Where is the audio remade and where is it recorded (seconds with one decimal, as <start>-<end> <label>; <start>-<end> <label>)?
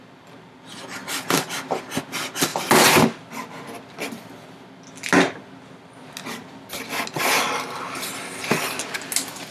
0.0-9.5 recorded